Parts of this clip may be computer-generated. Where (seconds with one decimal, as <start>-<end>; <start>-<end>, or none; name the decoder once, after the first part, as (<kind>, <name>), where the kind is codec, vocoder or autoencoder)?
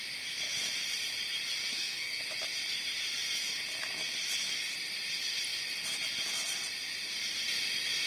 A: 1.6-2.2 (codec, SNAC)